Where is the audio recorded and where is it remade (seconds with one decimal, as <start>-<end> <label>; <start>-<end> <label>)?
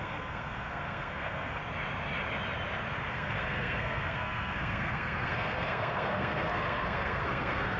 0.0-1.6 remade; 1.6-3.1 recorded; 3.1-7.8 remade